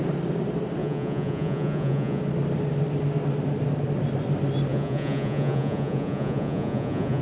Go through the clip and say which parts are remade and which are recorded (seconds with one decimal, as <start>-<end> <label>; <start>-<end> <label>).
0.0-0.8 recorded; 0.8-2.2 remade; 2.2-4.7 recorded; 4.7-7.2 remade